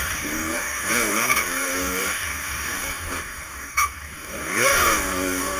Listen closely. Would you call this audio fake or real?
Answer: fake